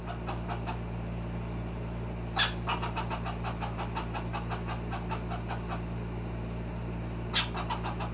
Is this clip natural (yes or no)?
yes